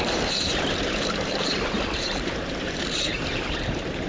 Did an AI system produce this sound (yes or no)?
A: yes